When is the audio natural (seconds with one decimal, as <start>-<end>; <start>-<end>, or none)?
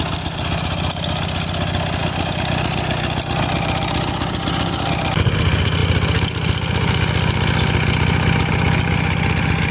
0.0-9.7